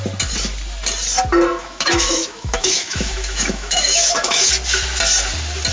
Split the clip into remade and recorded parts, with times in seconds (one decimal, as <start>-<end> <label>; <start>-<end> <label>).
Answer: 0.0-1.6 recorded; 1.6-4.5 remade; 4.5-5.7 recorded

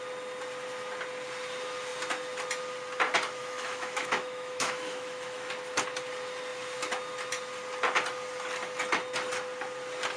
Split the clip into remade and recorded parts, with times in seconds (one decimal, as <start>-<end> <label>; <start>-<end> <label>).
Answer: 0.0-3.4 recorded; 3.4-5.5 remade; 5.5-10.2 recorded

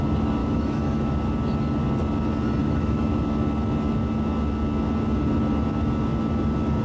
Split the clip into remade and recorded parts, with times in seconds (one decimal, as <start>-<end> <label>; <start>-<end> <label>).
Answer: 0.0-0.4 recorded; 0.4-1.1 remade; 1.1-2.6 recorded; 2.6-3.2 remade; 3.2-6.8 recorded

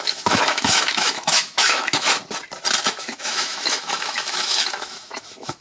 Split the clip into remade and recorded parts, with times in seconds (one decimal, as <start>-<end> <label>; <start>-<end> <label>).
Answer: 0.0-2.2 remade; 2.2-2.9 recorded; 2.9-5.6 remade

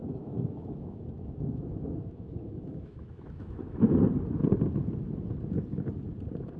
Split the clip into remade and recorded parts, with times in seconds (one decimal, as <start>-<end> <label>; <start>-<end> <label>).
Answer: 0.0-4.0 remade; 4.0-6.6 recorded

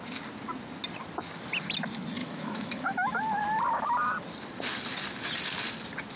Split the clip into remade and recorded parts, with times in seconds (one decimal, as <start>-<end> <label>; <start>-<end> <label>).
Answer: 0.0-2.2 recorded; 2.2-3.2 remade; 3.2-6.2 recorded

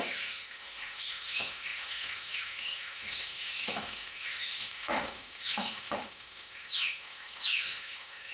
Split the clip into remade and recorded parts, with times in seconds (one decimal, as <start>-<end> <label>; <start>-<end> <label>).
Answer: 0.0-8.3 remade

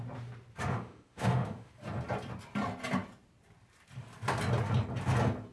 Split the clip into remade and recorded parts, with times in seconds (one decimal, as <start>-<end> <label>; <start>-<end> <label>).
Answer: 0.0-0.7 recorded; 0.7-1.7 remade; 1.7-5.5 recorded